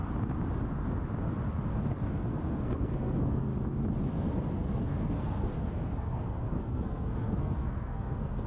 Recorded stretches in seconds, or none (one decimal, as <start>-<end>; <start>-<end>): 0.0-1.7; 3.5-4.1